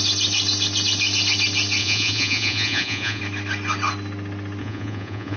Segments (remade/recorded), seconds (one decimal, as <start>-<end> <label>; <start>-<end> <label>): 0.0-1.8 recorded; 1.8-3.2 remade; 3.2-4.6 recorded; 4.6-5.4 remade